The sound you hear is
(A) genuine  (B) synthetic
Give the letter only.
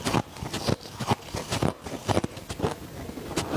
A